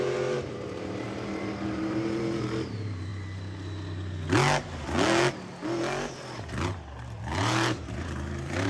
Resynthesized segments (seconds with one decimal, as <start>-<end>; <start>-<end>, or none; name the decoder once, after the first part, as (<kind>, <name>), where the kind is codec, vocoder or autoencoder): 0.0-3.1 (vocoder, BigVGAN v2); 7.2-8.7